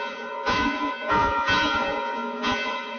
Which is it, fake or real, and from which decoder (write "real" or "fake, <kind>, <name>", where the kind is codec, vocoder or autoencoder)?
fake, vocoder, Vocos